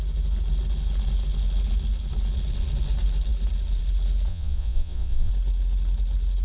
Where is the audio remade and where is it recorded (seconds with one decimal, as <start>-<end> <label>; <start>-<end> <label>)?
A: 0.0-4.3 recorded; 4.3-5.3 remade; 5.3-6.4 recorded